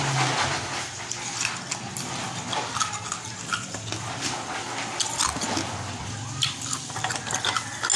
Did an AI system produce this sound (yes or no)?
no